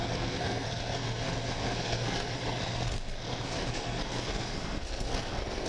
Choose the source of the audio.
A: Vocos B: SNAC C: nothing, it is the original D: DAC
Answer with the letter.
B